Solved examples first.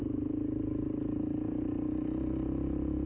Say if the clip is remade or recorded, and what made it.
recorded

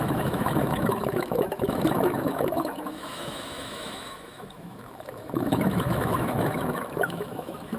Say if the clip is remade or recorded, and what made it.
remade, autoencoder, DAC-VAE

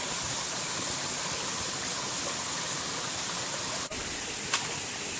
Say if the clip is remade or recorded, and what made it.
recorded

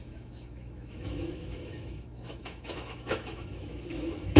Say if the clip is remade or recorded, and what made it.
remade, autoencoder, DAC-VAE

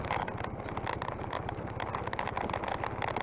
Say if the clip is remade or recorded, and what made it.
recorded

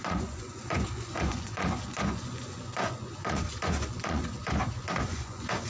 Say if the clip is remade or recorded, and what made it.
remade, vocoder, Vocos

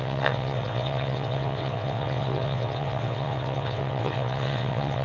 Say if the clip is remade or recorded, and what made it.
remade, vocoder, WaveNeXt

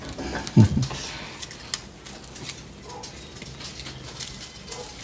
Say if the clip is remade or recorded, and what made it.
recorded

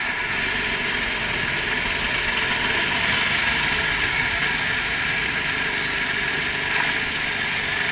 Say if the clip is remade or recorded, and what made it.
recorded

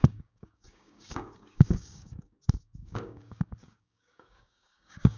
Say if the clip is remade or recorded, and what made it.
remade, codec, DAC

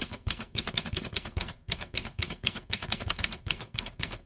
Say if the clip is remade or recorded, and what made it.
remade, codec, SNAC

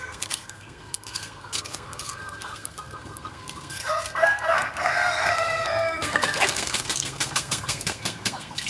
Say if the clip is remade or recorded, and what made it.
remade, codec, SNAC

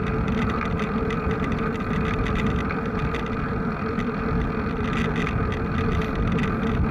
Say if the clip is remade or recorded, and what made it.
recorded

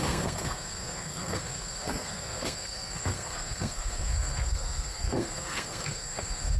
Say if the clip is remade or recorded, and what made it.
remade, codec, SNAC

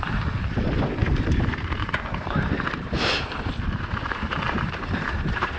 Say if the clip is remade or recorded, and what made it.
remade, vocoder, BigVGAN v2